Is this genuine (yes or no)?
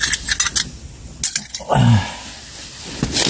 yes